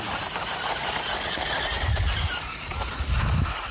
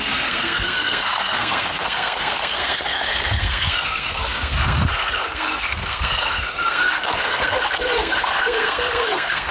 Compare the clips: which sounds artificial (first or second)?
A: second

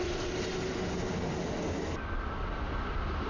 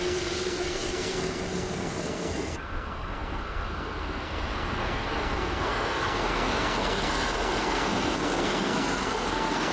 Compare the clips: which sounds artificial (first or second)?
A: second